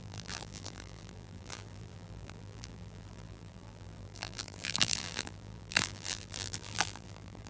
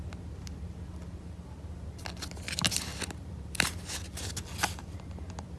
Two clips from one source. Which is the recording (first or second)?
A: second